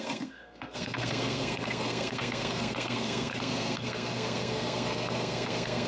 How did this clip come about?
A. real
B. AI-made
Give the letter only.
B